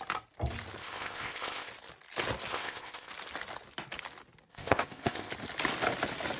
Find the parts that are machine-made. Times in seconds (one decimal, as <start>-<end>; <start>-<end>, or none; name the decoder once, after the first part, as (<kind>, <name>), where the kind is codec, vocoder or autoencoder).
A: 0.8-1.7 (codec, ZipCodec); 2.5-3.1; 4.5-5.3